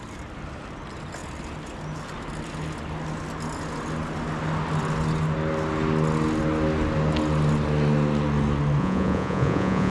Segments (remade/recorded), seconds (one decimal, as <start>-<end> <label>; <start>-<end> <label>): 0.0-8.8 recorded; 8.8-9.9 remade